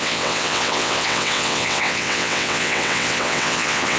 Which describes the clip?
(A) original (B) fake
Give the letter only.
B